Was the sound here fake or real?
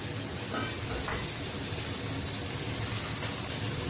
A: real